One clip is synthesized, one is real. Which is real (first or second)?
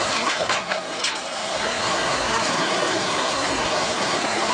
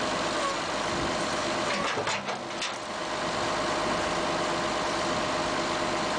second